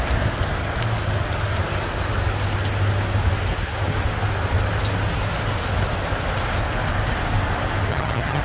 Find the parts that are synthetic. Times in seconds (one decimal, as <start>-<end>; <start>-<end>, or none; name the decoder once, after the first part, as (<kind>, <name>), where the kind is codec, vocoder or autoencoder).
7.9-8.4 (vocoder, HiFi-GAN)